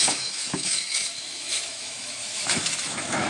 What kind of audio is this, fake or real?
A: fake